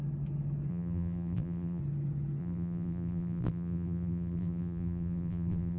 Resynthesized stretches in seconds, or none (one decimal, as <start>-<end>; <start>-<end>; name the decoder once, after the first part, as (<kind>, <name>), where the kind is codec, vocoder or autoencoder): 0.7-1.8 (vocoder, BigVGAN v2); 2.4-5.8